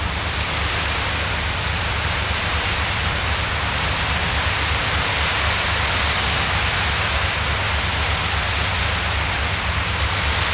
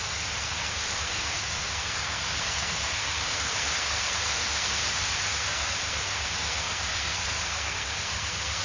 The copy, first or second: second